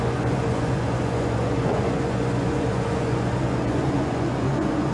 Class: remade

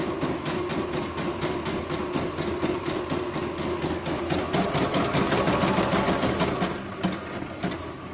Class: recorded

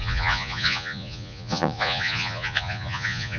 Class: remade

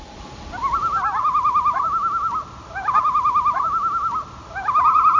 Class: recorded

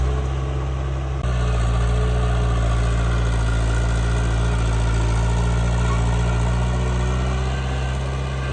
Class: recorded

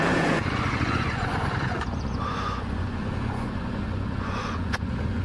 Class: remade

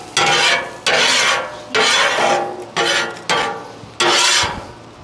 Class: recorded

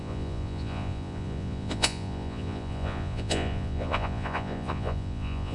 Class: remade